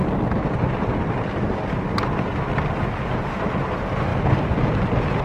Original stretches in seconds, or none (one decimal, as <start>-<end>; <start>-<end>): 0.0-5.2